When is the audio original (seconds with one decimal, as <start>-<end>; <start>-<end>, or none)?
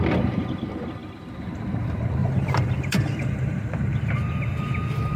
0.0-2.2; 4.1-5.2